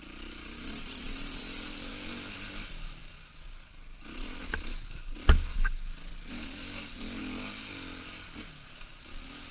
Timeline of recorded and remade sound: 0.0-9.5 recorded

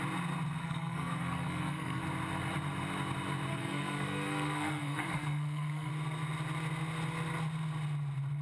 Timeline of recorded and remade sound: 0.0-0.6 recorded; 0.6-2.0 remade; 2.0-3.5 recorded; 3.5-5.9 remade; 5.9-8.4 recorded

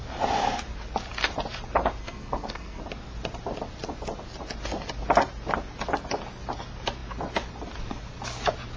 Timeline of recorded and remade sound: 0.0-2.0 recorded; 2.0-2.8 remade; 2.8-8.8 recorded

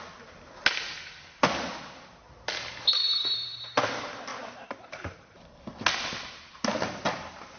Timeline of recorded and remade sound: 0.0-4.3 recorded; 4.3-5.4 remade; 5.4-7.6 recorded